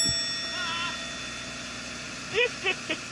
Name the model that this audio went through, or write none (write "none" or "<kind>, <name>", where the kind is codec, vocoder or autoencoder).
none